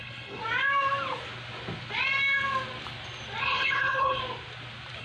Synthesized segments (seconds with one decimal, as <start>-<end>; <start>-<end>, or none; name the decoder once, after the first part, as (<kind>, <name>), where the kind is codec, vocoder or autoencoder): 0.0-0.4 (codec, HILCodec); 3.4-4.2